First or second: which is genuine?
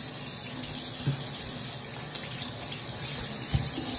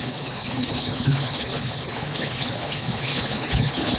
first